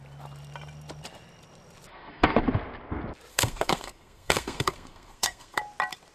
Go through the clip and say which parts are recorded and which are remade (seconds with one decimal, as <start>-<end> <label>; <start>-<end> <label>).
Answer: 0.0-1.9 recorded; 1.9-2.4 remade; 2.4-3.3 recorded; 3.3-5.6 remade; 5.6-6.1 recorded